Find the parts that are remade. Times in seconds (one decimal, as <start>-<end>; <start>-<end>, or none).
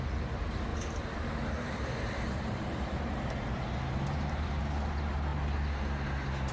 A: 0.7-4.6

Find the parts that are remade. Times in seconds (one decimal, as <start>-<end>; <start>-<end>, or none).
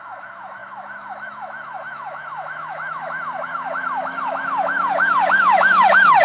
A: 0.0-6.2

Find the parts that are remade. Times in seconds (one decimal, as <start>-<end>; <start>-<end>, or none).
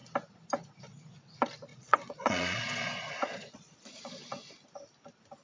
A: 1.7-4.5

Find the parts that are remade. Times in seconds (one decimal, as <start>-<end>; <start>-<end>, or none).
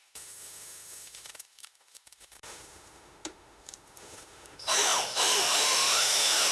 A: 0.0-6.5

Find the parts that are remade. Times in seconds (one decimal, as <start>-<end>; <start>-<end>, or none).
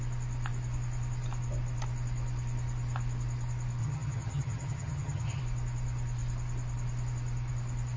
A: 3.8-5.4